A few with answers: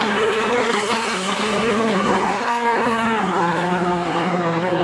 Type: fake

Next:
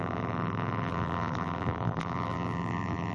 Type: fake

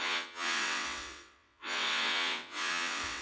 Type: fake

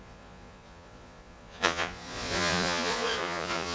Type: fake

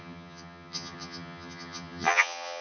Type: fake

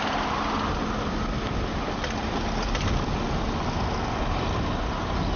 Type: real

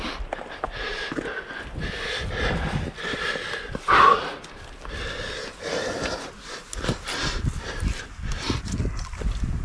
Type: real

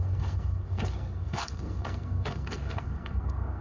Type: fake